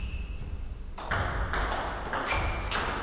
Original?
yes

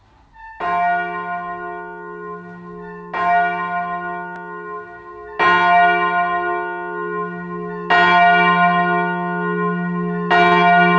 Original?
yes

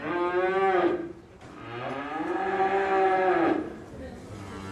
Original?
yes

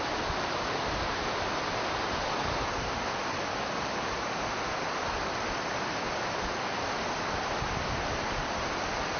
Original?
yes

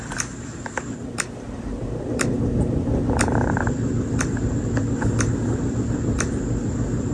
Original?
yes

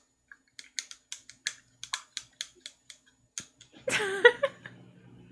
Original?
yes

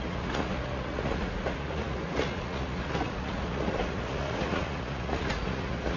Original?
no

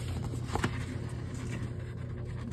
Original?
yes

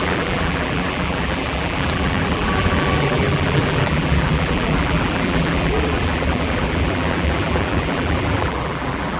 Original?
no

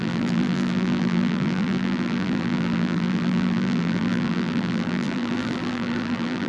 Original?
no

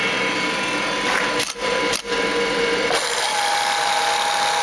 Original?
yes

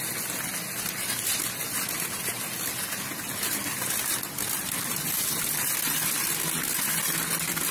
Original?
yes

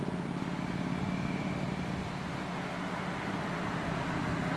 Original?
yes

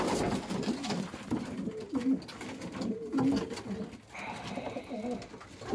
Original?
yes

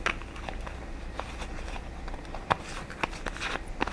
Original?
yes